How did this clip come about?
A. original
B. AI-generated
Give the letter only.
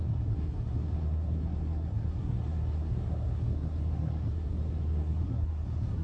B